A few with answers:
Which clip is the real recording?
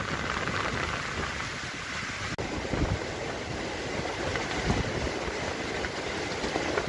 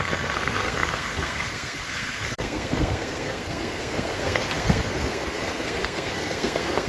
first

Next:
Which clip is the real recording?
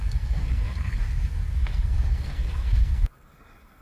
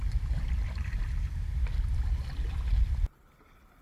second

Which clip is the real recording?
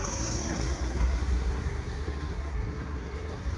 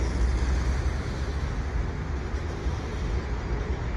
second